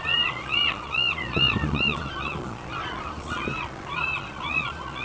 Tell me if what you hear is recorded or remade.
remade